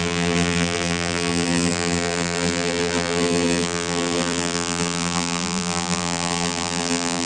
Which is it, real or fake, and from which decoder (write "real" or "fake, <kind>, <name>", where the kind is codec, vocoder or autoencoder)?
fake, vocoder, BigVGAN v2